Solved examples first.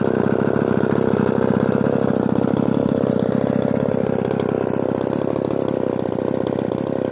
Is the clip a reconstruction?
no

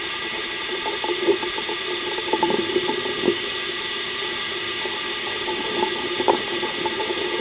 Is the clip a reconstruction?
yes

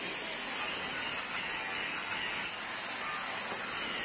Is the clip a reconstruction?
no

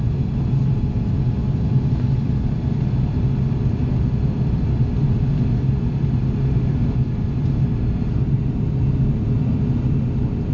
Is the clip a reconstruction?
no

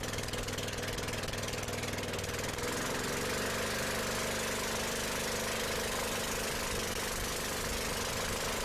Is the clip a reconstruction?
no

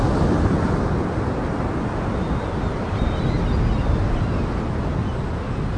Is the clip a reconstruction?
no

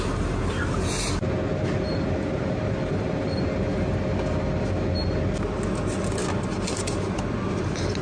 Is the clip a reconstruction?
no